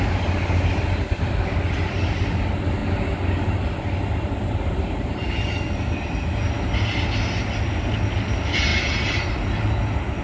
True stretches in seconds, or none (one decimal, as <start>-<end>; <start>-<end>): 0.0-8.7; 9.3-10.2